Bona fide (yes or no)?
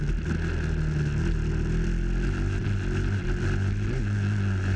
yes